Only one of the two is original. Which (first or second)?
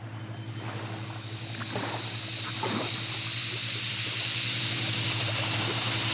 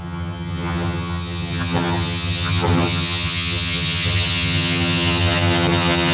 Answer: first